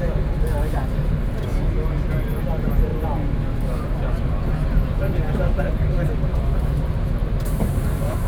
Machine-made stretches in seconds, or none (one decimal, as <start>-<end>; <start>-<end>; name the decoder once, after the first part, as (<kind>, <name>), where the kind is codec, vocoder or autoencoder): 7.2-7.7 (vocoder, BigVGAN v2)

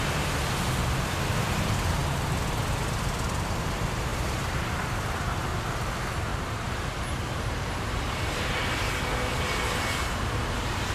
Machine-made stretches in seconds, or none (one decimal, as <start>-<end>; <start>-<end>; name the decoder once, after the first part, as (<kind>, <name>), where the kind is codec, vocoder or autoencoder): 4.1-5.5 (vocoder, BigVGAN v2); 6.3-9.0

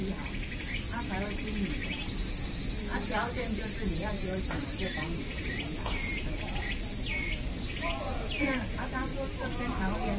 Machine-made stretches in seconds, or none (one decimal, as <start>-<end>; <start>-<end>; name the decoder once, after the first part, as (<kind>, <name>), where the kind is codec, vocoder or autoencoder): 1.8-6.7 (vocoder, BigVGAN v2); 9.1-9.7

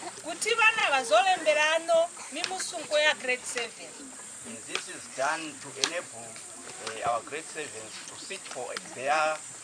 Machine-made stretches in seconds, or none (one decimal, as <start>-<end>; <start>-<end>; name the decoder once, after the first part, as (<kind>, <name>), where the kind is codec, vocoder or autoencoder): 0.0-0.8 (vocoder, BigVGAN v2); 3.1-9.6